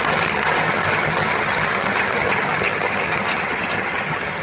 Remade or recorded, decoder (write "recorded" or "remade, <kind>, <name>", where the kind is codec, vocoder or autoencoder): remade, vocoder, HiFi-GAN